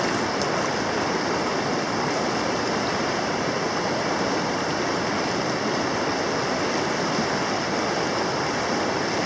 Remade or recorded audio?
recorded